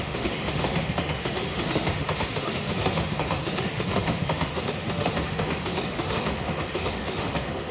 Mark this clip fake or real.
fake